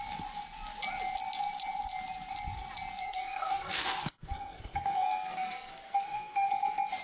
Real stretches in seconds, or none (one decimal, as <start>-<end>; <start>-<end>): 0.0-3.0; 6.5-7.0